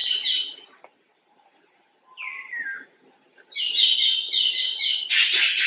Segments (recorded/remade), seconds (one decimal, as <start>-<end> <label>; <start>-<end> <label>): 0.0-0.8 remade; 0.8-5.7 recorded